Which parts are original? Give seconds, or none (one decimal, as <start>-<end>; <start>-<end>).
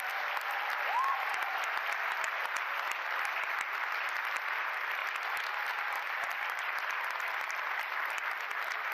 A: 5.0-6.4